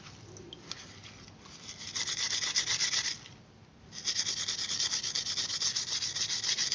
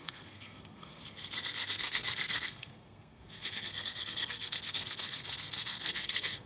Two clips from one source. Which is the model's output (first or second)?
second